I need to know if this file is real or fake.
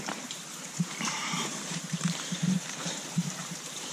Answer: fake